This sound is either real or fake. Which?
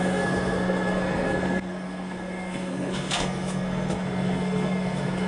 fake